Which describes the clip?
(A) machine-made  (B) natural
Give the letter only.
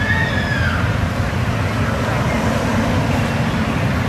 B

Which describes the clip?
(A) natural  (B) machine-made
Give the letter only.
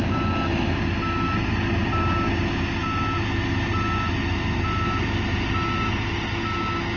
A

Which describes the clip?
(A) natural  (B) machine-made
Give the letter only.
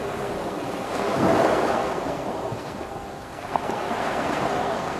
B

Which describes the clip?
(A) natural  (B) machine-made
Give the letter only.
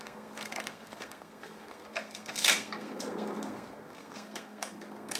B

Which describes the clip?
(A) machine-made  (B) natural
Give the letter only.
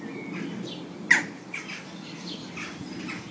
B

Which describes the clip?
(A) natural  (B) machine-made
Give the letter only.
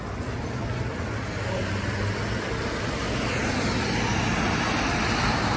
A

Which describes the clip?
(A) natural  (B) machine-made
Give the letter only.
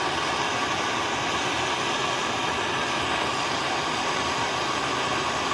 A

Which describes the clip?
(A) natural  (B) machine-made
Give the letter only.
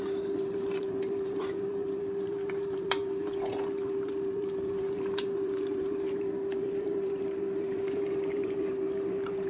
B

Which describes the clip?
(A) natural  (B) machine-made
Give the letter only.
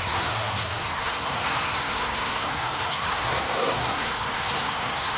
B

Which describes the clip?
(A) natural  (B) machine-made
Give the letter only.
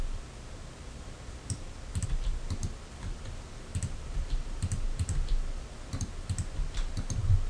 A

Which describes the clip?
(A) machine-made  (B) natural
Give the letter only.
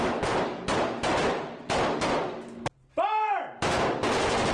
B